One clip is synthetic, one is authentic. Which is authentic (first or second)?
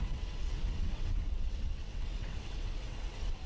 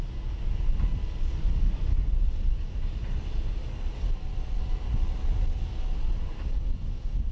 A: second